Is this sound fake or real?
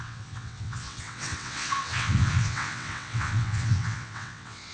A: fake